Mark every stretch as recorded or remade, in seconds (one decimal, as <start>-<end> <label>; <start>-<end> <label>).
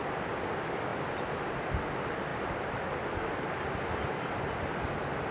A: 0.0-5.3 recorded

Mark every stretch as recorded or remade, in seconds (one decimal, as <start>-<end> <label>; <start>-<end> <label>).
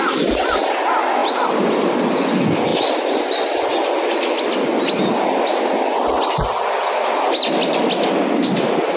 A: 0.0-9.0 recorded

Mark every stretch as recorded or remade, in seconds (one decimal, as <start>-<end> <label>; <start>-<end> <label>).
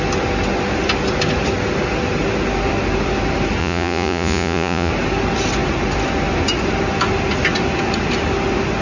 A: 0.0-3.6 recorded; 3.6-4.9 remade; 4.9-8.8 recorded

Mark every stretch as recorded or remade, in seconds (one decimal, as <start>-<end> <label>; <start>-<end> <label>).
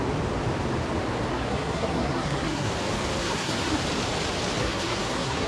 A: 0.0-1.3 recorded; 1.3-2.7 remade; 2.7-3.2 recorded; 3.2-3.7 remade; 3.7-4.6 recorded; 4.6-5.5 remade